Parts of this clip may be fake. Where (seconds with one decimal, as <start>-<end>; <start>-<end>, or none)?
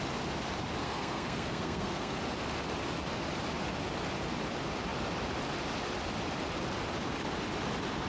0.8-2.2